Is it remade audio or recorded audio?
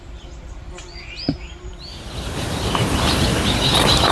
recorded